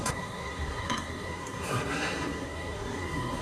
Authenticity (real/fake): fake